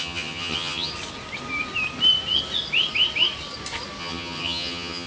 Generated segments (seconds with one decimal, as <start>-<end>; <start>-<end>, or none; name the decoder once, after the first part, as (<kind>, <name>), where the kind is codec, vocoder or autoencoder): 0.0-0.9 (vocoder, HiFi-GAN); 4.0-5.1